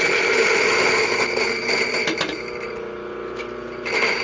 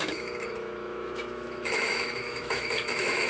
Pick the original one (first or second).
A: first